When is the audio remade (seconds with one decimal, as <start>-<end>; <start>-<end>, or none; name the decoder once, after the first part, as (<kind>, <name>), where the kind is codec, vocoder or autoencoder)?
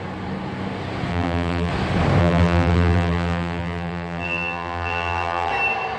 1.1-1.7 (vocoder, BigVGAN v2); 2.2-5.5